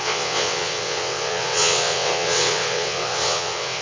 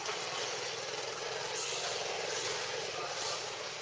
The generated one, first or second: first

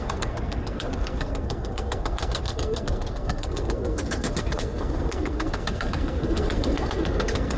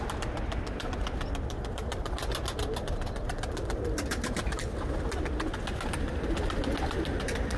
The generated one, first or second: first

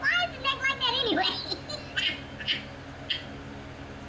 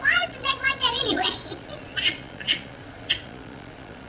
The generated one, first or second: second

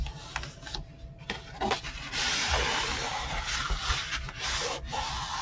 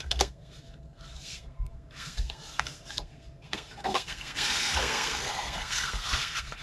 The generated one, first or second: second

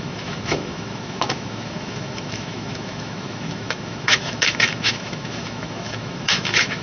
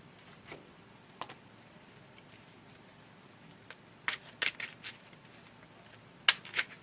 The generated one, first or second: first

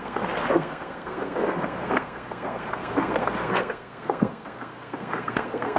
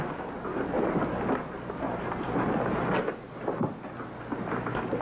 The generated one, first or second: first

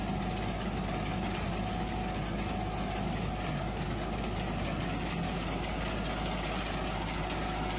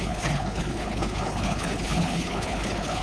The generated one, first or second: second